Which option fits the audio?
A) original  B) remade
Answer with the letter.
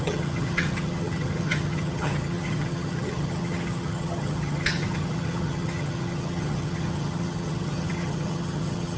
B